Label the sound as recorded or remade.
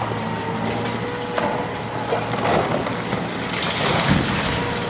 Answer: recorded